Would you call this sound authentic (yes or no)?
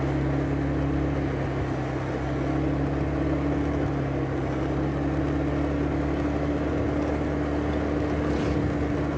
yes